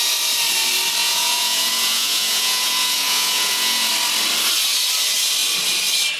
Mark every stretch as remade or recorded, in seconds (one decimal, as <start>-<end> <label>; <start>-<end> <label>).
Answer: 0.0-1.0 recorded; 1.0-3.9 remade; 3.9-6.2 recorded